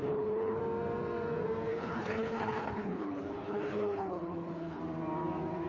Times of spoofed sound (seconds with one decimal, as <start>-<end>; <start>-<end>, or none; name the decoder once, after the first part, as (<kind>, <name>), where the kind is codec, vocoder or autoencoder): 0.0-0.6 (codec, HILCodec); 1.7-4.8